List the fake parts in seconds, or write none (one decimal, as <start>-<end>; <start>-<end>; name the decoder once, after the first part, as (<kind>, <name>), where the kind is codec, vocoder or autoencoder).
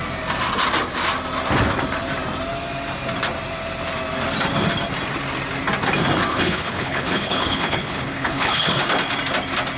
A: 6.3-8.8 (codec, HILCodec)